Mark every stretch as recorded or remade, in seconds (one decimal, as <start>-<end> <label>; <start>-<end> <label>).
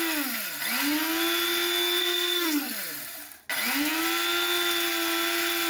0.0-2.0 recorded; 2.0-2.8 remade; 2.8-5.7 recorded